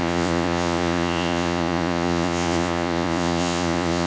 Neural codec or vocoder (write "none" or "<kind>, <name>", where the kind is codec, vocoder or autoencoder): vocoder, Vocos